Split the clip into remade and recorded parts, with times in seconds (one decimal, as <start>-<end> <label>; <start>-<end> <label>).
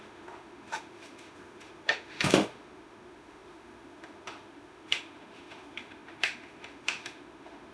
0.0-7.7 remade